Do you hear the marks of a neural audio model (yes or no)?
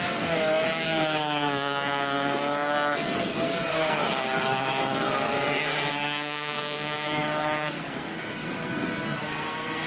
yes